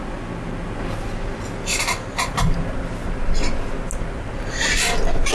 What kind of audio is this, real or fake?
real